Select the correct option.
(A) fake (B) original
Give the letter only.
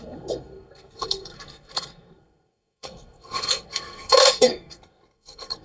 A